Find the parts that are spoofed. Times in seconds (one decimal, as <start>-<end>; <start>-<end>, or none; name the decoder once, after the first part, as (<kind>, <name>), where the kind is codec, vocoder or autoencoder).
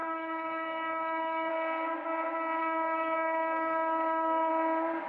0.0-1.5 (codec, DAC); 2.6-4.5